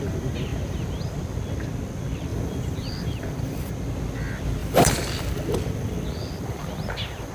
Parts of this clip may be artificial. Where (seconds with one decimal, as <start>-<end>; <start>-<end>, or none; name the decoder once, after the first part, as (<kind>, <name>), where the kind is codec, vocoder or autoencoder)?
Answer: 2.3-3.7 (vocoder, BigVGAN v2); 4.6-7.3